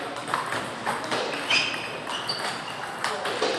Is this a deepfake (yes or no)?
no